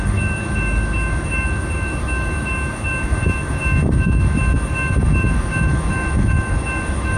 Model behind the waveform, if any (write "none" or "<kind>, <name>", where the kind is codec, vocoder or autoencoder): autoencoder, DAC-VAE